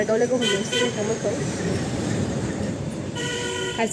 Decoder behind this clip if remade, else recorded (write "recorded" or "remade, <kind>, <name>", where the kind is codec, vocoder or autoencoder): remade, vocoder, BigVGAN v2